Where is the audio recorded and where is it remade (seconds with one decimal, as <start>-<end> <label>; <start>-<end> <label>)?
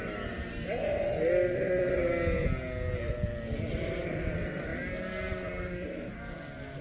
0.0-6.8 recorded